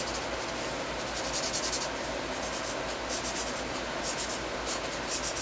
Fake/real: real